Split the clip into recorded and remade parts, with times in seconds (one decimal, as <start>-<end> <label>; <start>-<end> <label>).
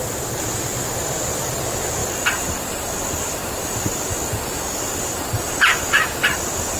0.0-6.8 recorded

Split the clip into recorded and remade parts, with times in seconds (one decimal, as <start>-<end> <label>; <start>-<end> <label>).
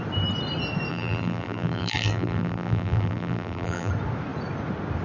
0.0-0.9 recorded; 0.9-3.9 remade; 3.9-5.0 recorded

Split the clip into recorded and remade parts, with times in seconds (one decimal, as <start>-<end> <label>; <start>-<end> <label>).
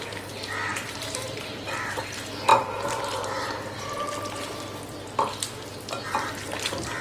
0.0-0.7 recorded; 0.7-1.8 remade; 1.8-7.0 recorded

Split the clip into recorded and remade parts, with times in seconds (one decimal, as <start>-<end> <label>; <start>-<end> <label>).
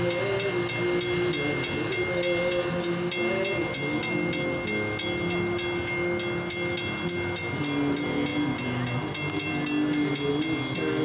0.0-11.0 recorded